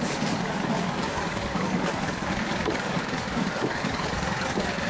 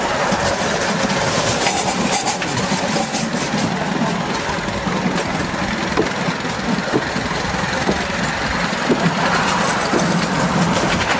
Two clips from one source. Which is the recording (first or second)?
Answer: second